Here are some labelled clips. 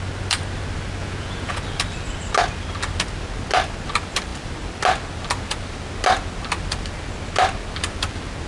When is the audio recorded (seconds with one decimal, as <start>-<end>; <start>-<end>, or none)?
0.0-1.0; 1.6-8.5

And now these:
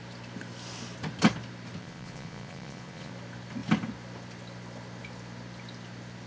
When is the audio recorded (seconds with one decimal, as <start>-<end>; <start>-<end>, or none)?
0.0-1.8; 3.1-6.3

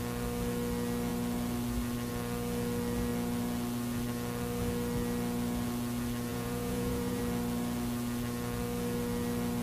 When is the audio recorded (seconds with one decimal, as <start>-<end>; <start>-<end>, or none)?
0.0-6.3; 7.2-9.6